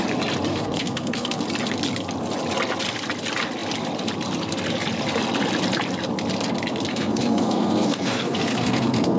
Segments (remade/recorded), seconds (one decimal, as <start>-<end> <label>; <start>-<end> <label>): 0.0-0.5 recorded; 0.5-1.4 remade; 1.4-6.9 recorded; 6.9-9.2 remade